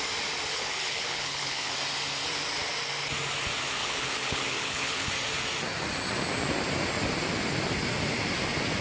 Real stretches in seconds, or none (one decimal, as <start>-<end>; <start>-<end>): 0.0-0.5; 1.7-3.8; 5.1-8.8